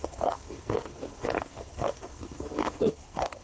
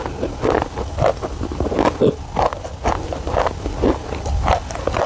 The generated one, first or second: first